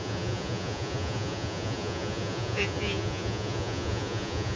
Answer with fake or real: fake